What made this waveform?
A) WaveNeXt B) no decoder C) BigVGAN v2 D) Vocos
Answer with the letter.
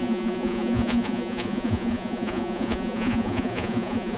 D